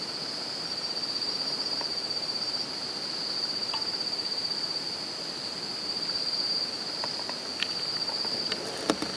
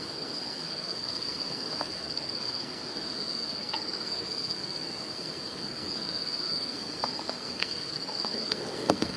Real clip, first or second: first